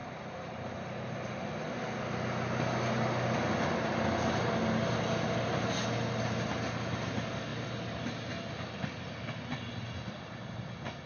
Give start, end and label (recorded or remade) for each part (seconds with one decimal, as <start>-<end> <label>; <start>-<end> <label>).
0.0-11.1 recorded